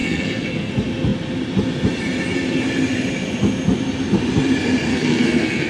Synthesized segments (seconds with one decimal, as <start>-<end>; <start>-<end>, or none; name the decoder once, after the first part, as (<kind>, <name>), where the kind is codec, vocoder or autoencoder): 0.0-0.7 (codec, SNAC); 4.9-5.7